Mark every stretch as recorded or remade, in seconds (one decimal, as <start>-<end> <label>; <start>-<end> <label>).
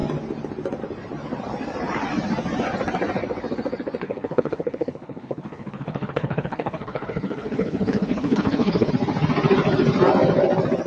0.0-4.0 recorded; 4.0-8.9 remade; 8.9-10.9 recorded